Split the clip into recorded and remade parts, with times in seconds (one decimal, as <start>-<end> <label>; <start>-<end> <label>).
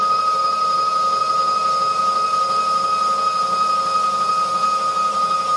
0.0-5.6 recorded